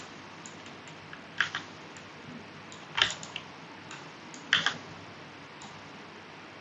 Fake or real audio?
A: real